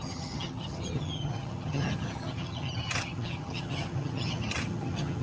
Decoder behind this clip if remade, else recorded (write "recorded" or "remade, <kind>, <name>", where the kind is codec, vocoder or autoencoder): remade, vocoder, HiFi-GAN